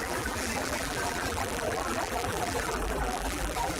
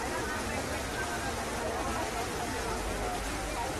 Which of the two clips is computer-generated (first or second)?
first